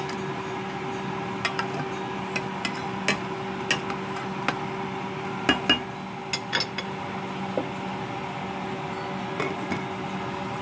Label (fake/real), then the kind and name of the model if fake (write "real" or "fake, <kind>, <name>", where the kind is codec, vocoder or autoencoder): real